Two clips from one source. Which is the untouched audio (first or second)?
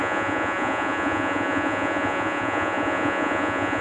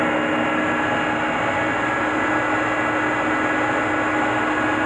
second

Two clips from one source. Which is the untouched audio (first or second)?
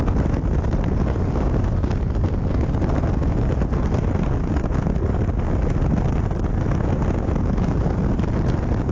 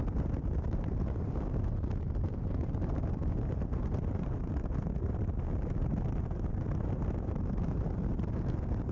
first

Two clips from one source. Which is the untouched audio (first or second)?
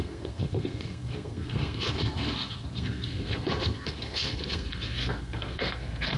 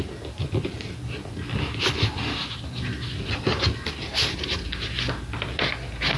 second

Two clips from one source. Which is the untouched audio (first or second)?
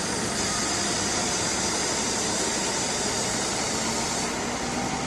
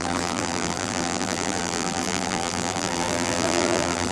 first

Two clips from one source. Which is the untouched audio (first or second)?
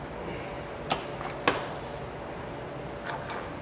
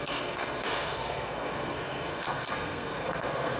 first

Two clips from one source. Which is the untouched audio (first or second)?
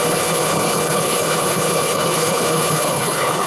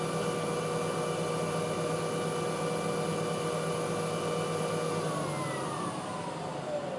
second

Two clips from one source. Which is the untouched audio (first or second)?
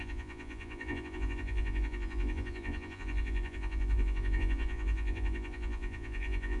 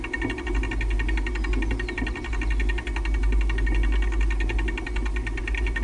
second